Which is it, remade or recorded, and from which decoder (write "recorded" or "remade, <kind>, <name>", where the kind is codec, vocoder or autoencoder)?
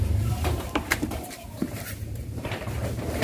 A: remade, vocoder, BigVGAN v2